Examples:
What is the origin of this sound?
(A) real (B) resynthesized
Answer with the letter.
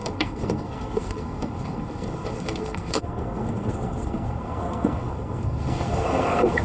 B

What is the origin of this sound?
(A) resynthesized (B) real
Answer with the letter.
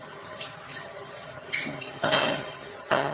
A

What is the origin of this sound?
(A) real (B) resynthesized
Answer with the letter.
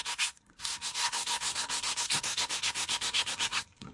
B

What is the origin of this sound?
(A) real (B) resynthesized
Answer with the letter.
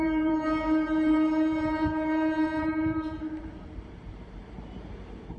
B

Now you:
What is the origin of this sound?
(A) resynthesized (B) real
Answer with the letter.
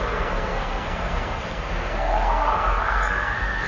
A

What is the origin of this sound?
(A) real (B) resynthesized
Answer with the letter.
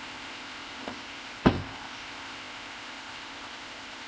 B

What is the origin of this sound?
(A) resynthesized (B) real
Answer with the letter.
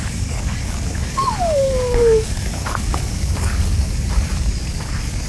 A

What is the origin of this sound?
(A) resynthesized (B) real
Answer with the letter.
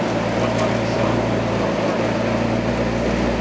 B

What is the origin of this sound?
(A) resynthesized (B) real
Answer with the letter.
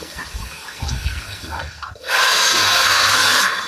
A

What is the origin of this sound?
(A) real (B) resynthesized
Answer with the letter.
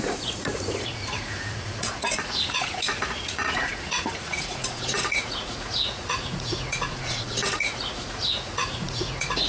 B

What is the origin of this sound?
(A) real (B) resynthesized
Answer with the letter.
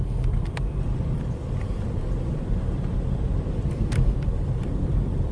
B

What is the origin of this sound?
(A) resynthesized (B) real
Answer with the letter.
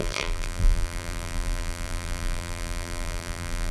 A